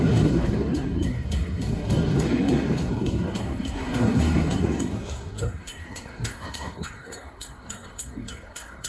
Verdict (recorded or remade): remade